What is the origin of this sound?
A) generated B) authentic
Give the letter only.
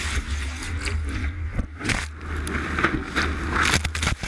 B